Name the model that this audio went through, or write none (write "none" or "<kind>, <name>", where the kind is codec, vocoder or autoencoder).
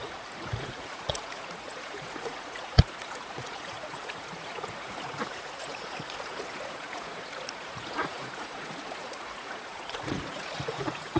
vocoder, Vocos